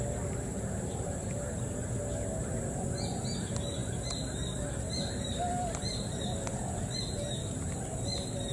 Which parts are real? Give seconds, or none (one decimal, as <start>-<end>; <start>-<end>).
0.0-8.5